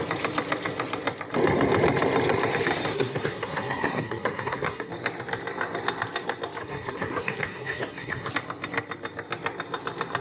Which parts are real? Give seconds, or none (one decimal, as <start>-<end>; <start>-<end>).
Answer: 0.0-2.9; 4.9-6.6; 8.3-10.2